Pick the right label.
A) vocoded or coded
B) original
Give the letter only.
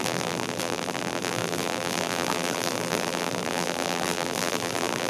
A